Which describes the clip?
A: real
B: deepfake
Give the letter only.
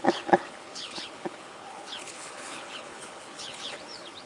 B